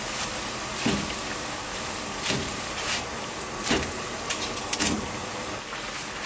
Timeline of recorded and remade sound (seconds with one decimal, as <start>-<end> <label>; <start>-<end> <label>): 0.0-1.7 recorded; 1.7-4.6 remade; 4.6-6.3 recorded